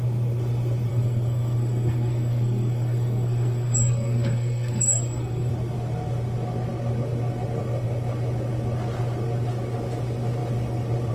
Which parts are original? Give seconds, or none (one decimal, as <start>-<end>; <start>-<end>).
0.0-0.9; 5.5-11.1